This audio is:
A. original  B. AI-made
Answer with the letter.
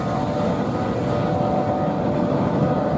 A